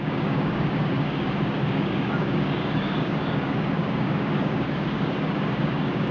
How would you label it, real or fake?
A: fake